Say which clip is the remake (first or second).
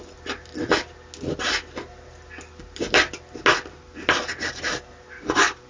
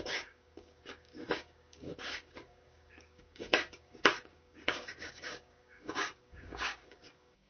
second